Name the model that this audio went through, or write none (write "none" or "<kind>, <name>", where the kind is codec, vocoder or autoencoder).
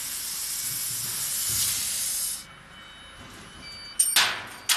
none